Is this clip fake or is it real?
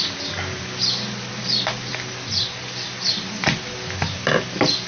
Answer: real